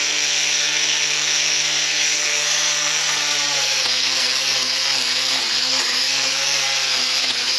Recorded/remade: remade